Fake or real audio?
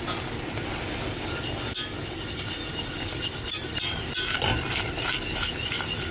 real